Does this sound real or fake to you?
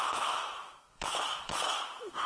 fake